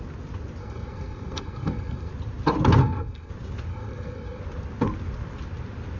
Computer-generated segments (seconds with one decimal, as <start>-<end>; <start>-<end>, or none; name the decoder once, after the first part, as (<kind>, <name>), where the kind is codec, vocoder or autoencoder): 0.6-2.1 (codec, SNAC); 2.8-3.3; 3.7-4.4